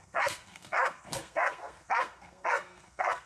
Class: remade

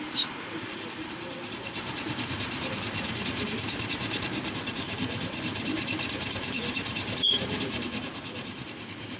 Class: remade